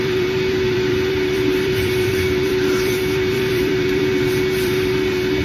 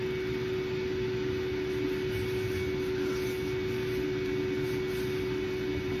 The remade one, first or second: first